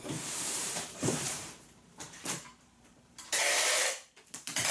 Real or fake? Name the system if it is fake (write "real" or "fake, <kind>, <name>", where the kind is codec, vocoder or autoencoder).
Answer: fake, vocoder, BigVGAN v2